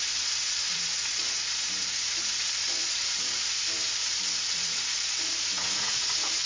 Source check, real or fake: fake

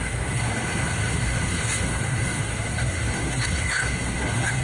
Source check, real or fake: fake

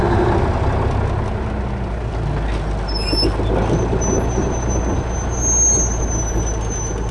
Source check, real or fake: real